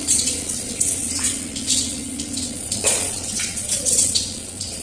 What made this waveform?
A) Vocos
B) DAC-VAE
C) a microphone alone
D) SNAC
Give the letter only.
A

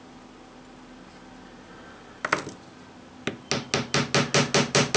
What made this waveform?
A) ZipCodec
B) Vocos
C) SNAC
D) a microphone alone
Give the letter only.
D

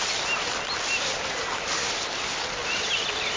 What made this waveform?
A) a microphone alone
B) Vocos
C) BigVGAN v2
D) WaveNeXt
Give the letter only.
A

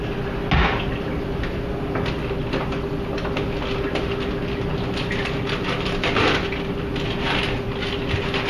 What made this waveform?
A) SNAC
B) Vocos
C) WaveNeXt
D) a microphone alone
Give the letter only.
D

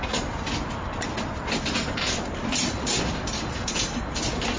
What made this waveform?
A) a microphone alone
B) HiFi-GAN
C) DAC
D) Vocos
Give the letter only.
A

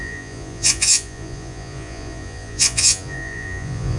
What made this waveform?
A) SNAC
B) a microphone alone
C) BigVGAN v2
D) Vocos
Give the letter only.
D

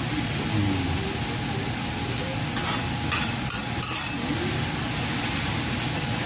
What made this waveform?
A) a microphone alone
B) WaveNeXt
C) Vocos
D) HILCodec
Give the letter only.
A